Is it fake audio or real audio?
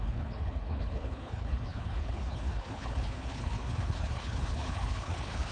fake